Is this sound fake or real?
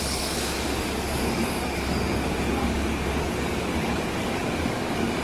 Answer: fake